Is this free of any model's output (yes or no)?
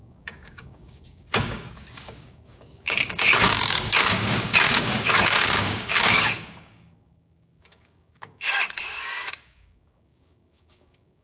no